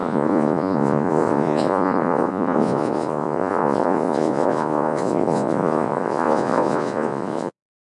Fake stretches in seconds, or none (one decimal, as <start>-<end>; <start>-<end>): 0.0-7.9